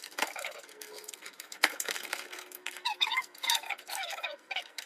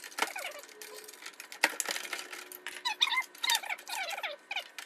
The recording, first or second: second